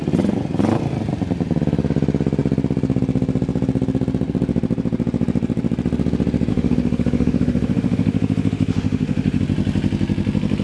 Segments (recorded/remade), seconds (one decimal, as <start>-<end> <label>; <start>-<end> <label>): 0.0-6.5 recorded; 6.5-9.4 remade; 9.4-10.6 recorded